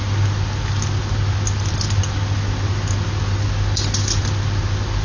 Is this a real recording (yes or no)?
yes